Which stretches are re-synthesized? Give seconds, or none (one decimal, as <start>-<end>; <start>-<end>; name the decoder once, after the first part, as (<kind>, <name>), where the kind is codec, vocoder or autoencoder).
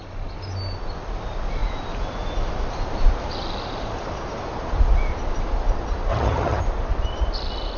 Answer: 6.1-6.6 (vocoder, HiFi-GAN)